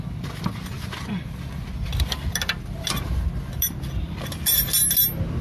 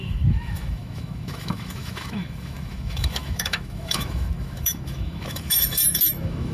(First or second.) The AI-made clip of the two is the second